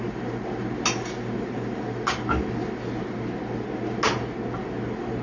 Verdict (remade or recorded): recorded